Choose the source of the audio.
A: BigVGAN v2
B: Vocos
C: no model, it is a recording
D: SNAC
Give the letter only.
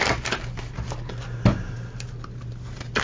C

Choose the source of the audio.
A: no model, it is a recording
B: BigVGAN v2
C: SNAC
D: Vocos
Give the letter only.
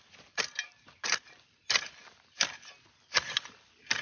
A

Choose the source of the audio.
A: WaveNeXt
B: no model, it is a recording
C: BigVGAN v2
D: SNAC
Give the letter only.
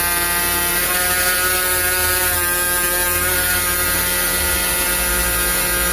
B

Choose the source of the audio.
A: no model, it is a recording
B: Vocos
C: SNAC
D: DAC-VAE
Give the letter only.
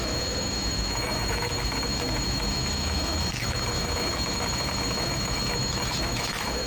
D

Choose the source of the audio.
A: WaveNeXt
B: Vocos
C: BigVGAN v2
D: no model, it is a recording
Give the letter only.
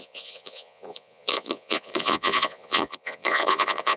B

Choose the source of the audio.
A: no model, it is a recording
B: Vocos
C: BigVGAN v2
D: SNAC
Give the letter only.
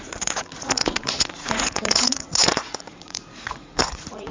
B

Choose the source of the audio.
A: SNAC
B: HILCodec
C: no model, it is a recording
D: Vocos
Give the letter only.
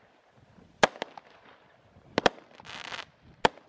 C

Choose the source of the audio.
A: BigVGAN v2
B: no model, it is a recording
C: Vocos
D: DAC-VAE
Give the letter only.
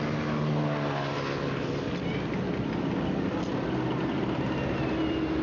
B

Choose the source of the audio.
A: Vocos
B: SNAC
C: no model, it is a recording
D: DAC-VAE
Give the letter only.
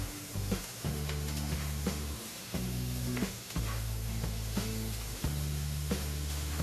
D